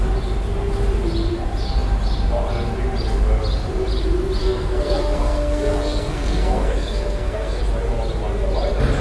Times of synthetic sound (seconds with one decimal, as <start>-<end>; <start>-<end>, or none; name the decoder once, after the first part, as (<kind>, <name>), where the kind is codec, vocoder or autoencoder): 4.4-7.6 (codec, SNAC)